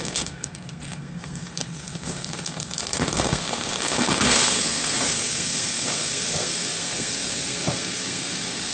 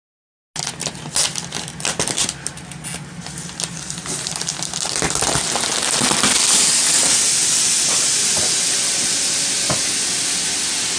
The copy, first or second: first